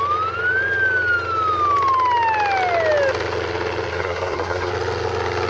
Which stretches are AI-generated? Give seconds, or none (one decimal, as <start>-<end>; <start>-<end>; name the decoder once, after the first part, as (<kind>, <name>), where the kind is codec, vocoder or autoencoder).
3.9-4.7 (codec, SNAC)